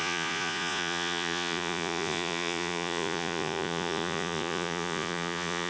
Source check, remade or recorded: remade